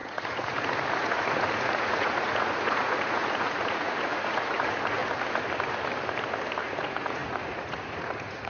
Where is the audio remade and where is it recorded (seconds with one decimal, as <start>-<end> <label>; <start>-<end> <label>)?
0.0-5.0 remade; 5.0-6.6 recorded; 6.6-8.5 remade